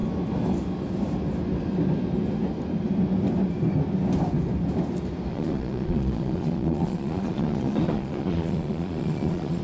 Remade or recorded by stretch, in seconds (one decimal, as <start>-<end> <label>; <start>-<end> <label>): 0.0-5.3 recorded; 5.3-9.6 remade